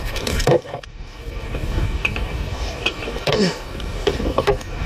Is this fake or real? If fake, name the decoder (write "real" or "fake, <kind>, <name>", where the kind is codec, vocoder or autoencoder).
fake, codec, DAC